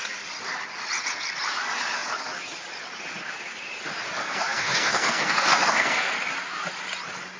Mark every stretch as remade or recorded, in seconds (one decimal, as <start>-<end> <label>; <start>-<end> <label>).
0.0-4.2 recorded; 4.2-6.1 remade; 6.1-7.4 recorded